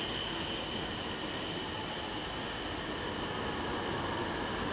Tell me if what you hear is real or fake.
real